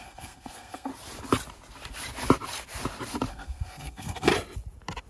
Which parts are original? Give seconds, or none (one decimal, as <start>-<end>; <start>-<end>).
0.9-3.3; 4.3-5.1